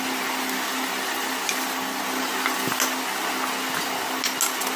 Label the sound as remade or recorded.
recorded